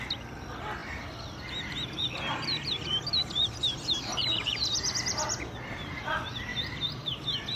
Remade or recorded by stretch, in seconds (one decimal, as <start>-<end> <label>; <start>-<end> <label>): 0.0-0.8 recorded; 0.8-5.4 remade; 5.4-6.5 recorded; 6.5-7.1 remade; 7.1-7.6 recorded